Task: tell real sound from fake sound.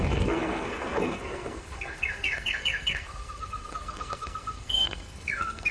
fake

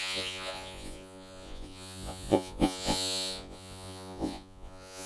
fake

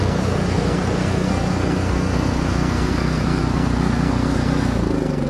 fake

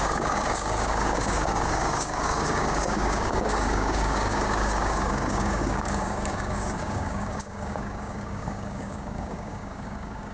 fake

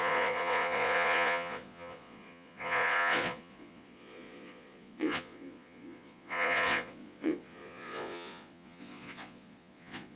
fake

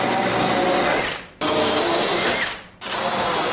real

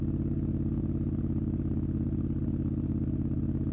real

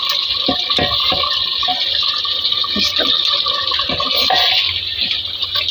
real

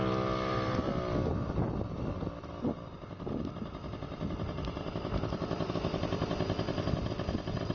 real